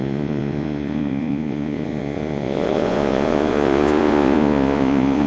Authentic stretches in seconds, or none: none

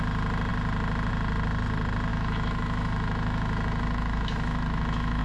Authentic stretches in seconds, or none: 0.0-2.1